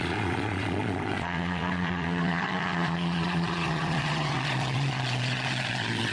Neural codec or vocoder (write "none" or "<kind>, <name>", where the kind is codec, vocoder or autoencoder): vocoder, Vocos